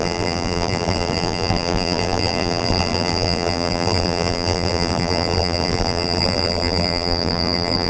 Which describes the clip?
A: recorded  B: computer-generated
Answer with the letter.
B